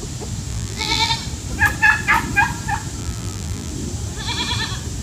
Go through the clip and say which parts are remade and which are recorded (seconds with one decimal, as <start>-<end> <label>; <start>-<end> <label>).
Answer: 0.0-0.5 recorded; 0.5-1.1 remade; 1.1-3.0 recorded; 3.0-3.7 remade; 3.7-5.0 recorded